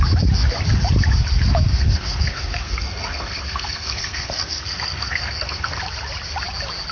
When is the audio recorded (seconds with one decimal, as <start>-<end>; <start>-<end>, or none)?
0.0-1.7; 5.8-6.9